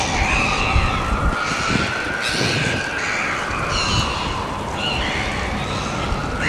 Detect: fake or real real